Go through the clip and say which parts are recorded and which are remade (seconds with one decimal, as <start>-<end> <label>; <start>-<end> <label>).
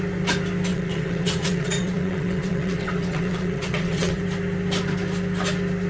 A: 0.0-0.7 recorded; 0.7-4.2 remade; 4.2-5.9 recorded